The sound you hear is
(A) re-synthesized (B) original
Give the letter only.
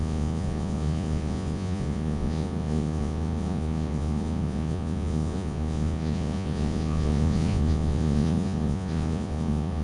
A